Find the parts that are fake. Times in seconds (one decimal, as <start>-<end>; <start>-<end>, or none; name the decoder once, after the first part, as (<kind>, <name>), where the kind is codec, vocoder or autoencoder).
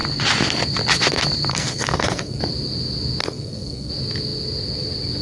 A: 1.5-2.4 (codec, SNAC); 3.2-3.9